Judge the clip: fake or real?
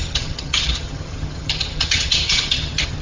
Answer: fake